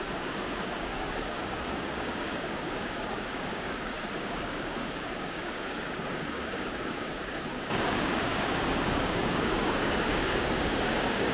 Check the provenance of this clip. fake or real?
fake